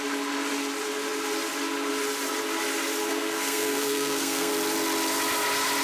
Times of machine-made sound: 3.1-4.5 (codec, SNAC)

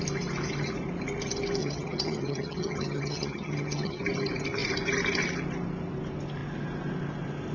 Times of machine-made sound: 1.6-4.0 (vocoder, HiFi-GAN)

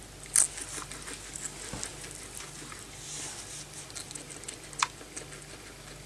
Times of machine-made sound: none

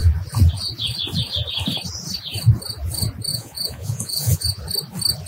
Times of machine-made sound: 3.3-4.6 (vocoder, Vocos)

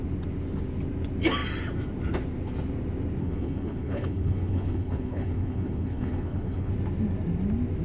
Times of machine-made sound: 3.2-6.7 (codec, HILCodec)

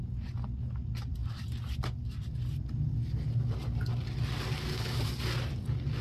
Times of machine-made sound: 1.2-1.8 (vocoder, BigVGAN v2)

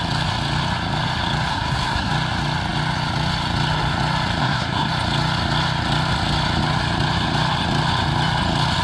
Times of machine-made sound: 1.5-2.1 (codec, SNAC); 4.4-4.9

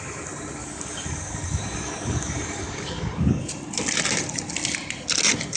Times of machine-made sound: 0.6-3.5 (codec, DAC)